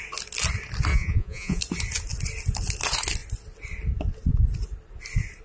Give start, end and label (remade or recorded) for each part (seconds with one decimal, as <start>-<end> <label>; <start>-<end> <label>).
0.0-0.9 recorded; 0.9-1.6 remade; 1.6-5.4 recorded